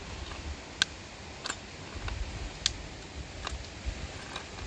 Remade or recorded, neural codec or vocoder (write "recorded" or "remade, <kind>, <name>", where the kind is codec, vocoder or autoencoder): recorded